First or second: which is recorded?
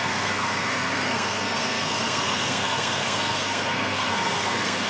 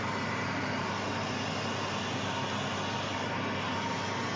second